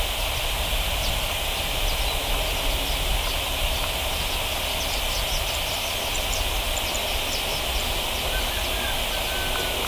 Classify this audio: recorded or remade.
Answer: recorded